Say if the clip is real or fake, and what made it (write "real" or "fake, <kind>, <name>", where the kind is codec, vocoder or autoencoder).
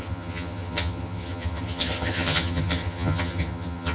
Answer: fake, vocoder, HiFi-GAN